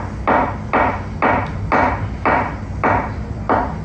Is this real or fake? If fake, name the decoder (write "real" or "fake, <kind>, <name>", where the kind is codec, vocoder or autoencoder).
real